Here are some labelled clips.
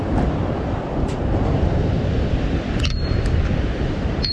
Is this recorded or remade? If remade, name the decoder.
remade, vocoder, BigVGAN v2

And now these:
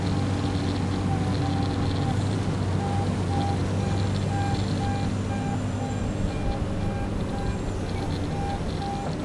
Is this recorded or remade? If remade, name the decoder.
recorded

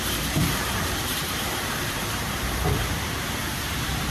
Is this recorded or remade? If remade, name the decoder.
remade, vocoder, BigVGAN v2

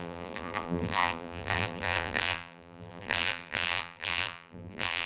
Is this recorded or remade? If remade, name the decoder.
remade, vocoder, BigVGAN v2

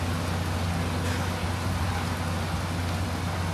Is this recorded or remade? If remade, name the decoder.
recorded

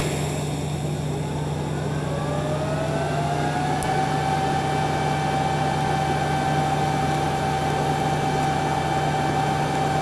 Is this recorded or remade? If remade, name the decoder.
recorded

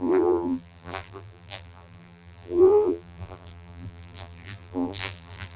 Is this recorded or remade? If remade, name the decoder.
remade, vocoder, BigVGAN v2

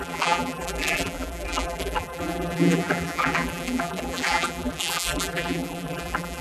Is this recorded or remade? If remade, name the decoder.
remade, vocoder, BigVGAN v2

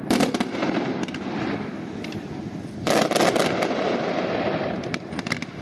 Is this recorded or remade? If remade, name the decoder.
recorded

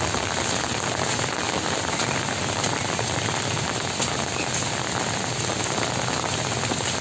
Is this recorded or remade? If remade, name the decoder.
recorded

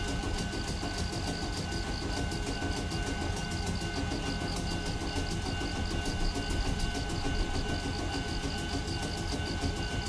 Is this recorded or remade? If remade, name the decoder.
recorded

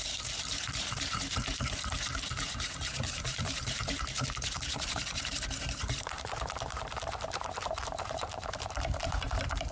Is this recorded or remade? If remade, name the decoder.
remade, vocoder, BigVGAN v2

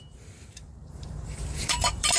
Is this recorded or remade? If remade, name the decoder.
remade, vocoder, BigVGAN v2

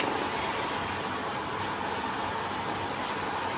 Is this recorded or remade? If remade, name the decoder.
recorded